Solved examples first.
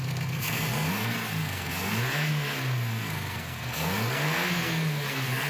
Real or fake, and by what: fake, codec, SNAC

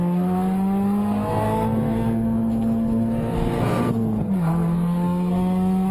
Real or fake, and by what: fake, codec, SNAC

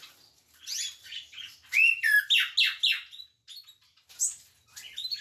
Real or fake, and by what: real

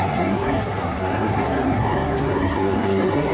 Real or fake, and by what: fake, codec, SNAC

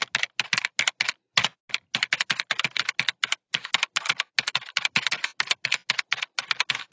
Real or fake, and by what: real